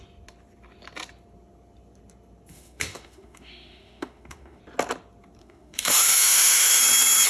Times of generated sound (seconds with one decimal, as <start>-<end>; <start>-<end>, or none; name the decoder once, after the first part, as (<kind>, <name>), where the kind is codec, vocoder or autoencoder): 2.5-4.6 (autoencoder, DAC-VAE); 5.4-6.8

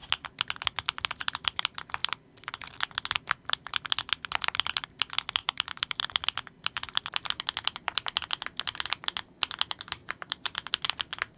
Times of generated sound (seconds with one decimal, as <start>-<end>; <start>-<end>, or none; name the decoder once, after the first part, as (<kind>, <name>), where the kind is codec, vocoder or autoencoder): 5.4-6.0 (vocoder, BigVGAN v2); 10.0-10.7

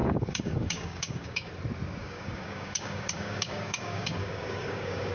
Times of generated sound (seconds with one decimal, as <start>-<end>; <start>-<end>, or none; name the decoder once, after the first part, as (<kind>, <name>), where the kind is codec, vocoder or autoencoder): 0.0-1.5 (codec, DAC); 2.0-5.1

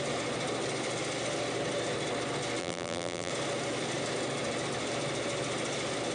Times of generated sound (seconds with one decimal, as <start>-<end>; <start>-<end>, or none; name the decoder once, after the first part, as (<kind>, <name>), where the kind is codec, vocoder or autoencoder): 2.6-3.3 (vocoder, BigVGAN v2)

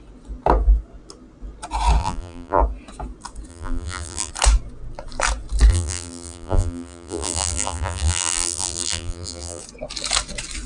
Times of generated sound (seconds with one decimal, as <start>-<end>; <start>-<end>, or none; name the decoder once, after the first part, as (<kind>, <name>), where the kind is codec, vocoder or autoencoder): 2.0-2.6 (vocoder, BigVGAN v2); 3.5-4.3; 5.7-9.6

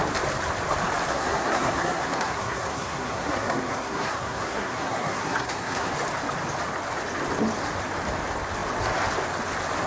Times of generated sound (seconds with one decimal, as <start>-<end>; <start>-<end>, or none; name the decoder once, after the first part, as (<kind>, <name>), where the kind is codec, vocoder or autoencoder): 1.1-5.9 (codec, SNAC)